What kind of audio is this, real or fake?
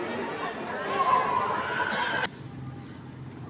real